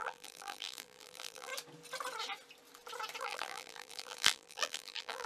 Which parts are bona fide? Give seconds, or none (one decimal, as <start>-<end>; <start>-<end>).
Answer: 1.5-3.2